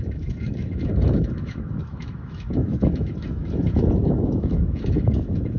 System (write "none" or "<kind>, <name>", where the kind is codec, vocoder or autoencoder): autoencoder, DAC-VAE